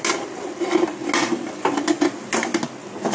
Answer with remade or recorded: recorded